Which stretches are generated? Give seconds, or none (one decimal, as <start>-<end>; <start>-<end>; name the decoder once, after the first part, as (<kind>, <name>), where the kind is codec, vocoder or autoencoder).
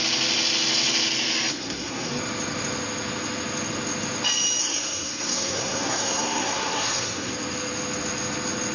1.5-2.1 (codec, SNAC); 4.6-7.3